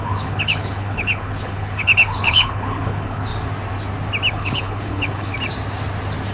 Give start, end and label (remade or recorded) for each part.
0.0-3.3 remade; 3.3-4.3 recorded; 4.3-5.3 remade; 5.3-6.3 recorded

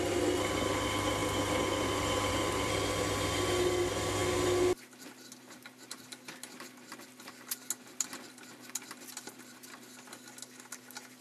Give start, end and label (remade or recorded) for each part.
0.0-11.2 recorded